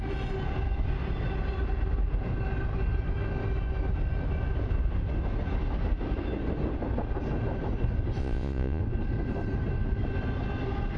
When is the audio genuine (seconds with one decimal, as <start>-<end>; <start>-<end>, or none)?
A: 0.0-8.2; 8.8-11.0